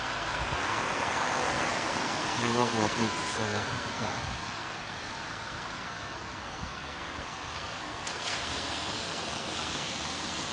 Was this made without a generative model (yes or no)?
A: no